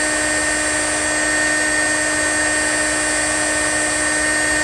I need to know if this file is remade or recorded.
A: recorded